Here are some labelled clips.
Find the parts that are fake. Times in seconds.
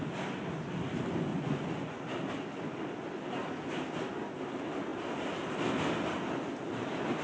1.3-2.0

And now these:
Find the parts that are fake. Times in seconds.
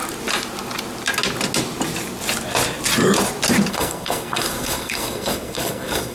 3.7-6.1